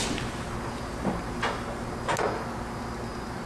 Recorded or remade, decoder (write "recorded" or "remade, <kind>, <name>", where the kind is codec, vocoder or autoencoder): recorded